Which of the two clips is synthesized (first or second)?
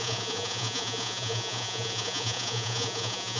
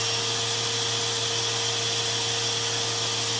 first